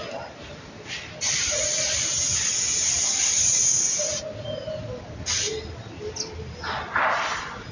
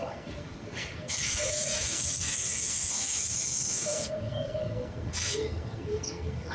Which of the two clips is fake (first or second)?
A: second